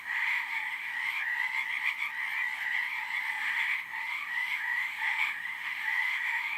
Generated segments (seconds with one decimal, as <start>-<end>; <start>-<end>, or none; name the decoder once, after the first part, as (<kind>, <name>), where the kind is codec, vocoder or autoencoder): 0.0-0.9 (autoencoder, DAC-VAE); 3.3-6.6